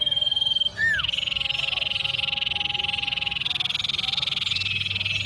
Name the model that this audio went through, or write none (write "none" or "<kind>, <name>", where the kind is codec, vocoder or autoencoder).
none